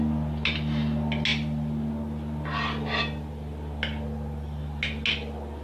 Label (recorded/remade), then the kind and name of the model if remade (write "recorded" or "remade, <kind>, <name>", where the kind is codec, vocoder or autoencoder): recorded